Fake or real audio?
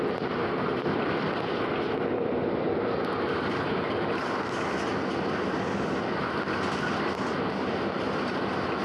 real